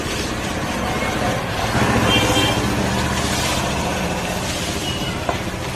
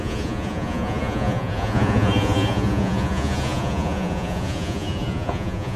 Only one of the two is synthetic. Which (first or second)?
second